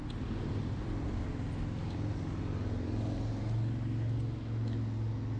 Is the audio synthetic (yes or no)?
no